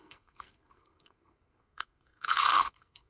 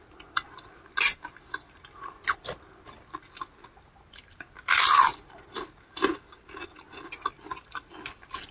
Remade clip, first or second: first